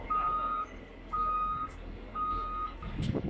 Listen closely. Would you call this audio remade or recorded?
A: remade